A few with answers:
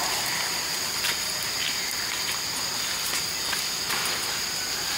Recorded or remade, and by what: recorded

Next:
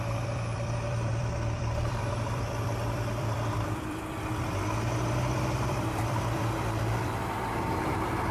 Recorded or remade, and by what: remade, vocoder, BigVGAN v2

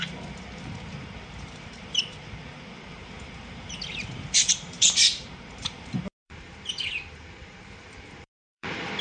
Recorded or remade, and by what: remade, vocoder, BigVGAN v2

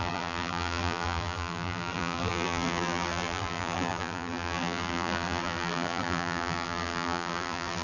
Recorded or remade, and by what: remade, vocoder, BigVGAN v2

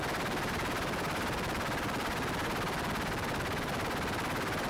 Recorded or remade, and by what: recorded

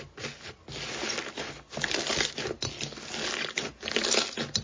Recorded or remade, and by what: recorded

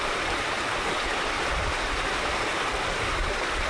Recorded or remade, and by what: remade, vocoder, BigVGAN v2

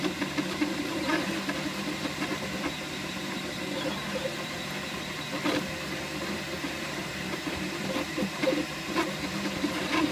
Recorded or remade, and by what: remade, vocoder, BigVGAN v2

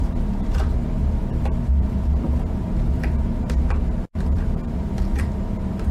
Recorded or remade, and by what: remade, vocoder, BigVGAN v2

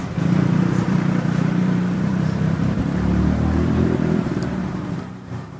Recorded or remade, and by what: remade, vocoder, BigVGAN v2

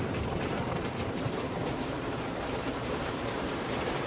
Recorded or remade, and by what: remade, vocoder, BigVGAN v2